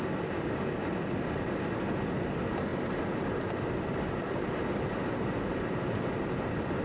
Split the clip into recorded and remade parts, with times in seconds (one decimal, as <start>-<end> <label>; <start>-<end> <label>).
0.0-6.8 recorded